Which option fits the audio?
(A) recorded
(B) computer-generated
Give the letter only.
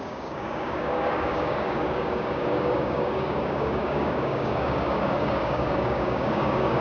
B